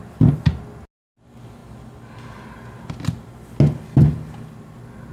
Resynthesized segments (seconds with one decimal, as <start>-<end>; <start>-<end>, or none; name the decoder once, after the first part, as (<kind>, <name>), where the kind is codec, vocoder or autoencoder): none